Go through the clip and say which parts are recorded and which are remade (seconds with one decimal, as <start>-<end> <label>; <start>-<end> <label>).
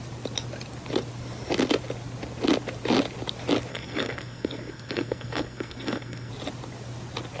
0.0-3.7 recorded; 3.7-6.3 remade; 6.3-7.4 recorded